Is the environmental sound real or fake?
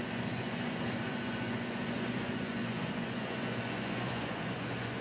fake